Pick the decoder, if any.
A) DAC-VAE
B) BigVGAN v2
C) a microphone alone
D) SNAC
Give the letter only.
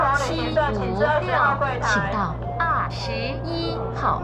C